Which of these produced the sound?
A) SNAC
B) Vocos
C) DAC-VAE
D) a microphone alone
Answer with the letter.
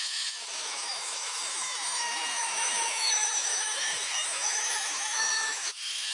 C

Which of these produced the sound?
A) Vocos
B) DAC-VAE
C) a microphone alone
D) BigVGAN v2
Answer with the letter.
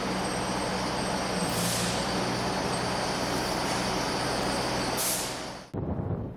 C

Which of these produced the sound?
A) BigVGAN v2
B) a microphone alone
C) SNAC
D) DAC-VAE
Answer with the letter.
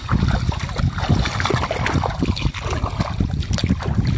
B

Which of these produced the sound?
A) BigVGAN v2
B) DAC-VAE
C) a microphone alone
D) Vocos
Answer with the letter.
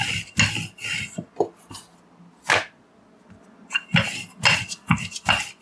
C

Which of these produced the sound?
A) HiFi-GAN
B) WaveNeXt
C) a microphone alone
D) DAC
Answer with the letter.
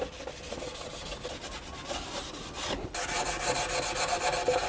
C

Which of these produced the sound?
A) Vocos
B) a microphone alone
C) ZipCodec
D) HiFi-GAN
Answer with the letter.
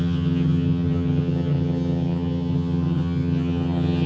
D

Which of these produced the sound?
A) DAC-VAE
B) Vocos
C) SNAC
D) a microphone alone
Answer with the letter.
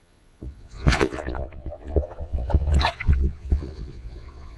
B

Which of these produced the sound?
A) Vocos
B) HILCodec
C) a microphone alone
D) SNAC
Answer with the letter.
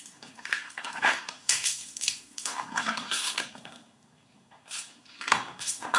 D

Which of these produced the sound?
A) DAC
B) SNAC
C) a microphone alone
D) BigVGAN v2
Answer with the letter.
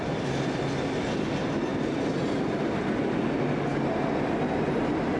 C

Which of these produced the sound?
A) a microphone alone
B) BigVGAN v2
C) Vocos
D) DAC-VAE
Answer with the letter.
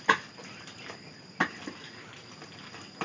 A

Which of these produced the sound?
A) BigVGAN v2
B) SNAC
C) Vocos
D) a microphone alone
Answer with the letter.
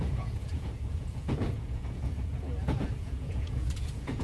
C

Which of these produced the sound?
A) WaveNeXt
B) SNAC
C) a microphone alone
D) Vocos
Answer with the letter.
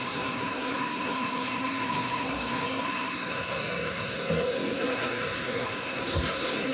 B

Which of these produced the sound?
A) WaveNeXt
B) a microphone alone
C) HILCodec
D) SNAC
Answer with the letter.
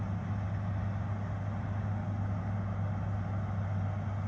B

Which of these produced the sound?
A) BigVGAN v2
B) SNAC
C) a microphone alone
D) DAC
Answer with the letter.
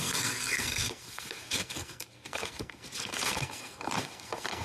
B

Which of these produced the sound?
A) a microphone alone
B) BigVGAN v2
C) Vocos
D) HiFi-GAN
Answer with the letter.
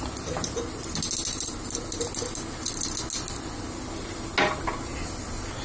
A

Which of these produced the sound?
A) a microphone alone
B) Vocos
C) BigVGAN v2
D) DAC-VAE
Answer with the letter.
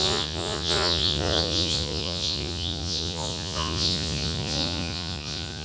B